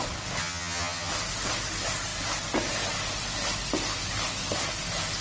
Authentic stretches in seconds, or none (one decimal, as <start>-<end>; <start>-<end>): 0.0-0.4; 1.1-5.2